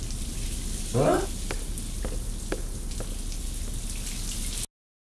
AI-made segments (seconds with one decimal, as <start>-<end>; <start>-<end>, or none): none